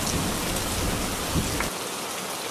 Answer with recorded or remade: recorded